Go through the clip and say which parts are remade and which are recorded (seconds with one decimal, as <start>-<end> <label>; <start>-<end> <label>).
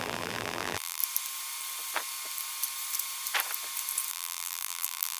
0.0-1.0 remade; 1.0-4.1 recorded; 4.1-5.2 remade